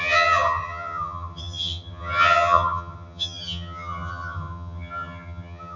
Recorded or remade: remade